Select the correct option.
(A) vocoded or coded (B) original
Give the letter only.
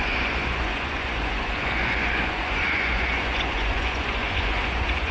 A